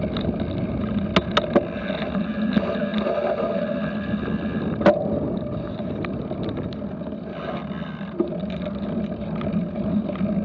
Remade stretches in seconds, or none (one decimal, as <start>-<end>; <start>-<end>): none

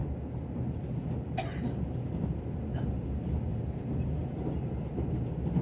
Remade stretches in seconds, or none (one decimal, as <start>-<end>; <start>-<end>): 3.5-4.8